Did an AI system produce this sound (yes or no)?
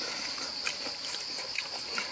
no